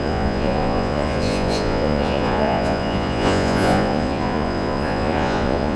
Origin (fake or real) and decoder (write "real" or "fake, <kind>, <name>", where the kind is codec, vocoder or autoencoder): fake, vocoder, Vocos